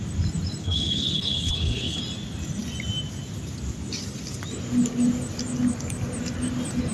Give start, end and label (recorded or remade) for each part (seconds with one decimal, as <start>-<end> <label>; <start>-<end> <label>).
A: 0.0-0.6 recorded; 0.6-2.0 remade; 2.0-6.9 recorded